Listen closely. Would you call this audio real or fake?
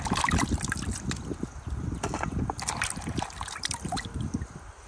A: real